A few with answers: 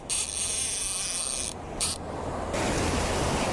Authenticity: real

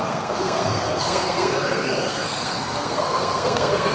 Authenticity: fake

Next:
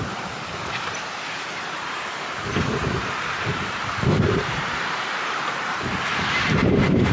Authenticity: fake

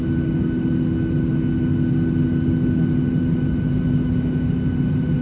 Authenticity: real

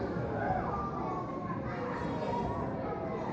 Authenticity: real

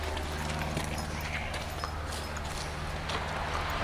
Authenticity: real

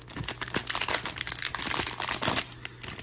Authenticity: real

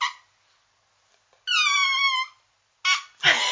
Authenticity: real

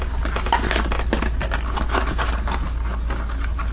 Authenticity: real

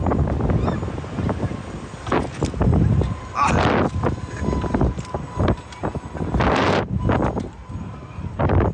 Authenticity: real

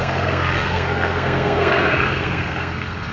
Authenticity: fake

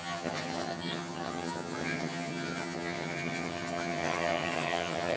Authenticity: fake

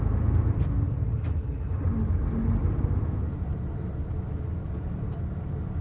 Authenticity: real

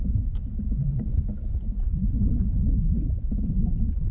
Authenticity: fake